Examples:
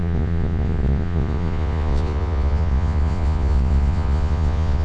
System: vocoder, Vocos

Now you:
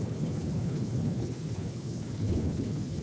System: codec, HILCodec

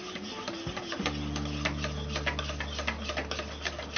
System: none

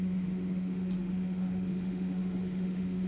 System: autoencoder, DAC-VAE